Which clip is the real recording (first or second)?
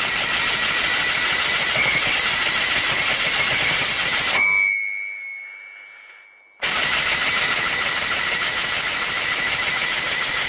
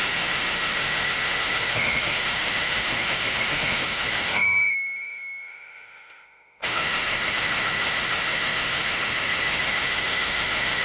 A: first